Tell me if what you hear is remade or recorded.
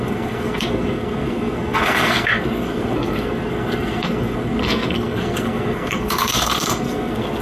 remade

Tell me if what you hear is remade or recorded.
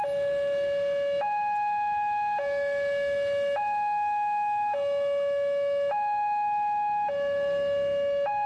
recorded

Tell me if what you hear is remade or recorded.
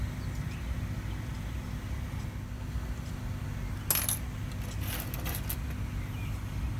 recorded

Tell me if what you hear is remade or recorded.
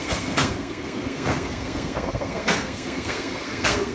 remade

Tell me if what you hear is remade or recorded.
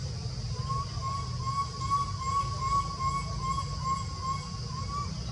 recorded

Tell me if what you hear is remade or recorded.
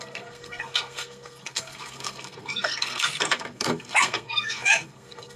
remade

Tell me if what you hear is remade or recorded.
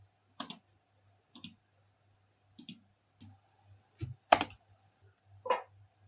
recorded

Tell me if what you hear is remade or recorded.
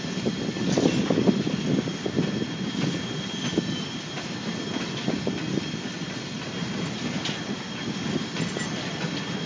recorded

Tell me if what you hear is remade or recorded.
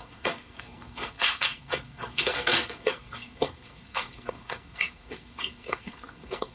remade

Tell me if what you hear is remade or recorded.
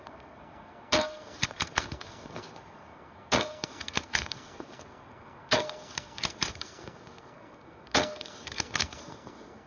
remade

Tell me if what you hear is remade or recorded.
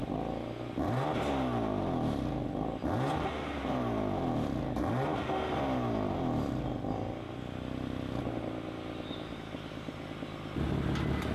recorded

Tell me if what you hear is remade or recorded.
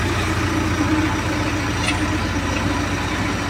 recorded